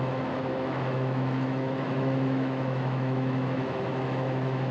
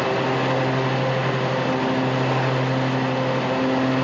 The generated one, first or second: first